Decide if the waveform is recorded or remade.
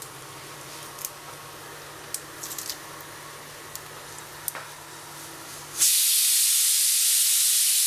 recorded